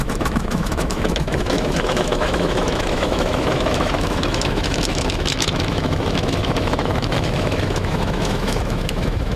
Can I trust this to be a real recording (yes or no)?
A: no